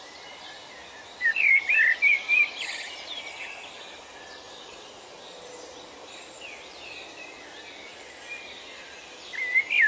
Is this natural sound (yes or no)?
no